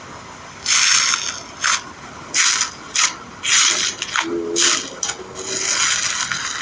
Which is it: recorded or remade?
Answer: recorded